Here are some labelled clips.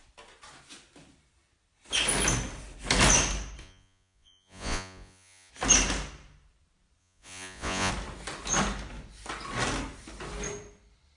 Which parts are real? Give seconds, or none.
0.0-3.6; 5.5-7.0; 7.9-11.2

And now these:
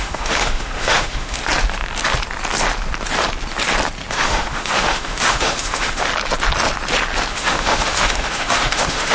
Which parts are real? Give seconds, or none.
1.4-4.1; 6.1-7.3

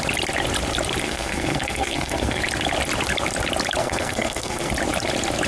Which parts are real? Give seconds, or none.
0.0-1.0; 2.4-3.8; 4.7-5.5

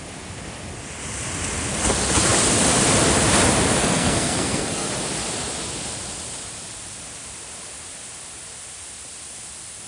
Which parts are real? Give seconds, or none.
0.0-3.8; 4.9-9.9